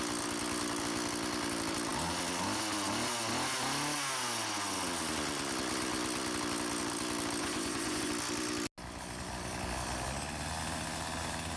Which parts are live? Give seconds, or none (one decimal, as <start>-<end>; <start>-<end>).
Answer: 0.0-7.4; 8.1-11.6